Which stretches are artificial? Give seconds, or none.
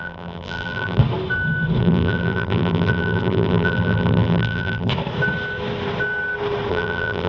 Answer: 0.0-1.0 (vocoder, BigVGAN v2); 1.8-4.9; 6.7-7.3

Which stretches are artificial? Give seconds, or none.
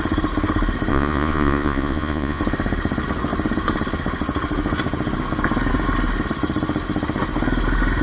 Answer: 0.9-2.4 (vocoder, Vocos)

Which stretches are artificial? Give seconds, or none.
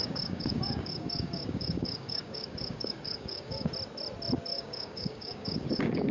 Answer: 0.0-3.7 (codec, DAC); 4.5-6.1